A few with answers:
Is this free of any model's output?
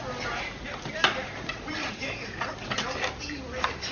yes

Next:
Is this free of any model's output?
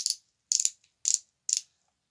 yes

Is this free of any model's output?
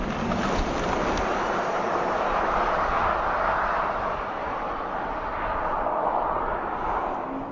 yes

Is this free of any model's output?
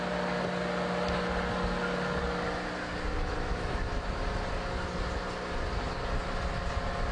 yes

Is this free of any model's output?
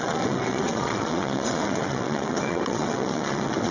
no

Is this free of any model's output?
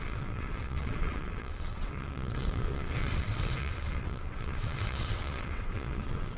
no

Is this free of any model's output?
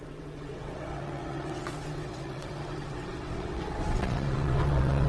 no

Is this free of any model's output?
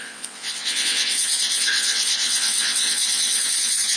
no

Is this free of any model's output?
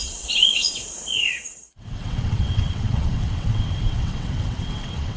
no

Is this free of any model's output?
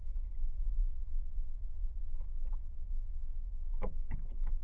no